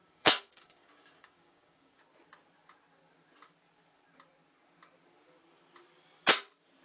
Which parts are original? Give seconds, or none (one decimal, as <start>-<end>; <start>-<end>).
2.0-6.8